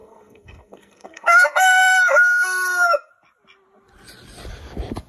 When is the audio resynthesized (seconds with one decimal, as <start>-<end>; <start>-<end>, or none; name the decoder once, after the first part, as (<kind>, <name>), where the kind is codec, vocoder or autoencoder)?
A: 0.0-3.1 (codec, SNAC)